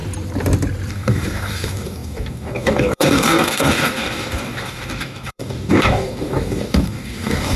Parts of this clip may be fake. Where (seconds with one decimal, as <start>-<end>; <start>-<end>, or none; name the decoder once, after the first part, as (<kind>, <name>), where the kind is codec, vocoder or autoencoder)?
0.9-7.6 (codec, DAC)